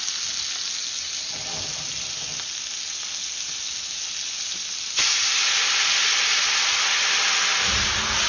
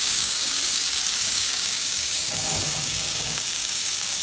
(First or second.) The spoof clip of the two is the second